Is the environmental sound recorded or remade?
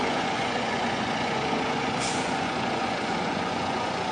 remade